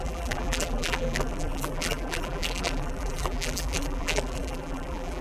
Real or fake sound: fake